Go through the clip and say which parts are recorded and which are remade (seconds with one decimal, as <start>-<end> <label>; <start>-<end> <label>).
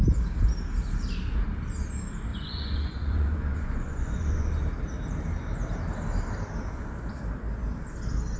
0.0-2.3 recorded; 2.3-4.5 remade; 4.5-8.4 recorded